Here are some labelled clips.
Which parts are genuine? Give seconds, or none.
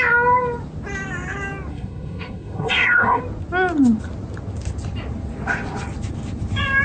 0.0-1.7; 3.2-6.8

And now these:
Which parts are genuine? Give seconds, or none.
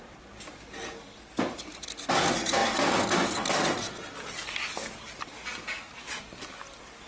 0.0-7.1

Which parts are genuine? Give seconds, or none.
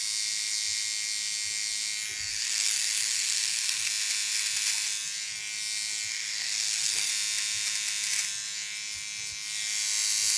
0.0-2.3; 3.9-6.1; 7.1-10.4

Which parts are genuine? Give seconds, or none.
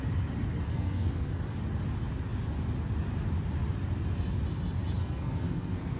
0.0-0.7; 1.4-5.0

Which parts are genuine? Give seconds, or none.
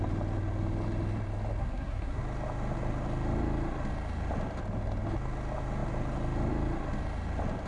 0.0-1.6; 2.2-7.7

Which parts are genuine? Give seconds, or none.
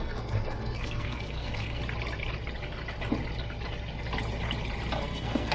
1.8-5.0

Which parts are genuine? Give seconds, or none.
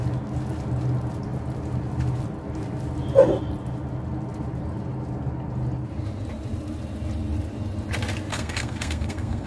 0.0-8.3